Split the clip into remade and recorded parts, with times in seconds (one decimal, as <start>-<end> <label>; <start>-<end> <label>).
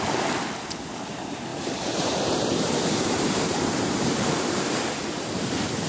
0.0-1.5 recorded; 1.5-5.0 remade; 5.0-5.9 recorded